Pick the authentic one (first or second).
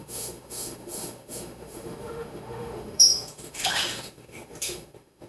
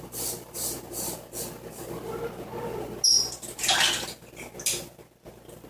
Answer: second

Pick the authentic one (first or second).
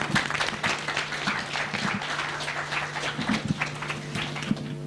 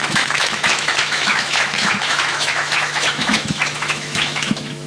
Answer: first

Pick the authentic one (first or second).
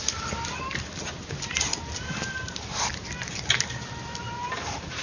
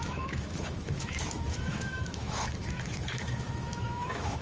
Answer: first